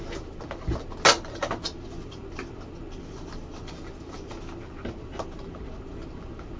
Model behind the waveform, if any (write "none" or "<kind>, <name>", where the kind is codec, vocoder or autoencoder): none